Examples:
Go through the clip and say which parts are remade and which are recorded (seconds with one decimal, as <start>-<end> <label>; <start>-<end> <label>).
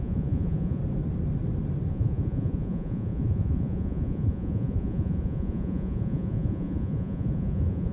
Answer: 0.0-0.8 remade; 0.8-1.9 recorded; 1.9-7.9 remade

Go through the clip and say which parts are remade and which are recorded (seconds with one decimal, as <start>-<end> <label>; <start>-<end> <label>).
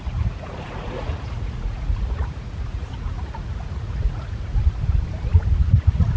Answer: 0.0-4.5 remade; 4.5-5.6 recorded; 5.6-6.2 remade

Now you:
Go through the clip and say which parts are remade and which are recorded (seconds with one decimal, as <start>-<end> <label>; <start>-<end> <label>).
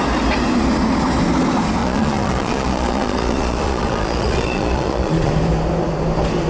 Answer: 0.0-1.8 recorded; 1.8-5.3 remade; 5.3-6.5 recorded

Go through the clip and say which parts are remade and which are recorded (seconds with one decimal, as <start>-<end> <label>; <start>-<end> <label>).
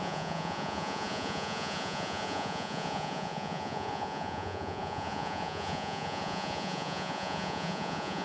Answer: 0.0-8.2 remade